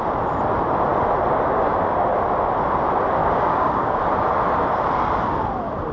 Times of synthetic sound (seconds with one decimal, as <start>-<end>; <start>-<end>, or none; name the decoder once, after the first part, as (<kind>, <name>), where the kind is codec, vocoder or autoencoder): 3.2-4.0 (codec, DAC)